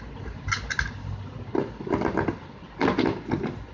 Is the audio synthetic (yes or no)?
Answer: no